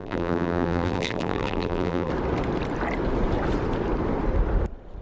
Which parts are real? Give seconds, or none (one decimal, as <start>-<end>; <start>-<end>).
2.1-5.0